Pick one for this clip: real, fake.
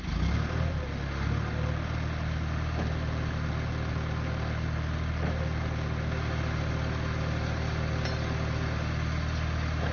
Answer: real